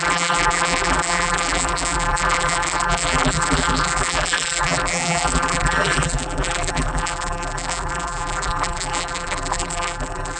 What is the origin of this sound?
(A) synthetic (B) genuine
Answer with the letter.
A